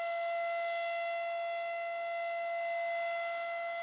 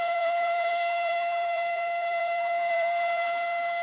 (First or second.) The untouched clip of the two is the first